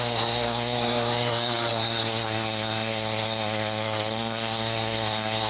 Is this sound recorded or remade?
remade